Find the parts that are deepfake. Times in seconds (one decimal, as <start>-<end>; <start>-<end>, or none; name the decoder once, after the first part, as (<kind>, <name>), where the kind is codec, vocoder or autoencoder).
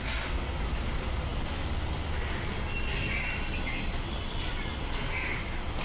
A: none